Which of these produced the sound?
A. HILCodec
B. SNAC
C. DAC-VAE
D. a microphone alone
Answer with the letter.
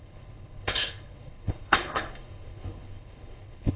A